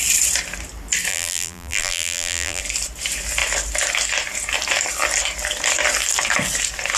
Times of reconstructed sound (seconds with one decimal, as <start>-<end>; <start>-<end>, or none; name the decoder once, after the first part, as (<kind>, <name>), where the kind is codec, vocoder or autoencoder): 1.1-2.6 (vocoder, BigVGAN v2)